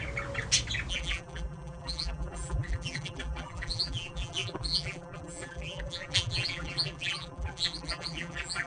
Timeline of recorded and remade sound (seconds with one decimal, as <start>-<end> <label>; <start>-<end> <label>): 0.0-0.9 recorded; 0.9-8.7 remade